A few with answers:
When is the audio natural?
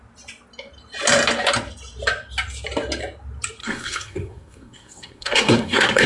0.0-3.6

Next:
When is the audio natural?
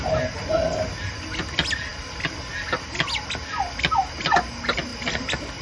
0.0-5.6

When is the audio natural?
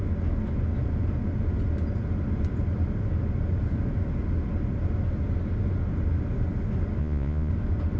0.0-7.0; 7.5-8.0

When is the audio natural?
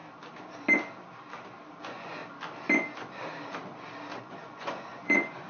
0.0-1.8; 2.2-4.2